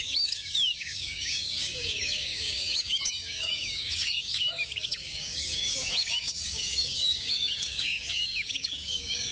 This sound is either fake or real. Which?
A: fake